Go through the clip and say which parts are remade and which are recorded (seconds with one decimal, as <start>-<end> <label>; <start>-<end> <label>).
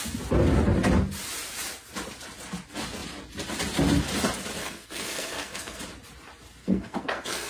0.0-4.6 recorded; 4.6-5.8 remade; 5.8-6.6 recorded; 6.6-7.5 remade